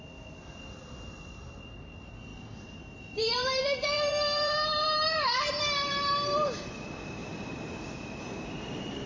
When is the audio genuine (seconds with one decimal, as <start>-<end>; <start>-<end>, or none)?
0.0-2.3; 6.7-7.2; 8.2-9.1